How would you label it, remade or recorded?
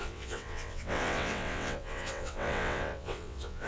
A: remade